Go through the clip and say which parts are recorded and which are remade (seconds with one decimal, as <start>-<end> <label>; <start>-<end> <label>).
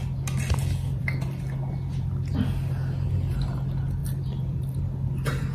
0.0-4.0 recorded; 4.0-4.8 remade; 4.8-5.5 recorded